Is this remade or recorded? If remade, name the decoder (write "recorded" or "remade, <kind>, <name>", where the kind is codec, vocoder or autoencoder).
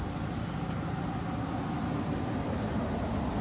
recorded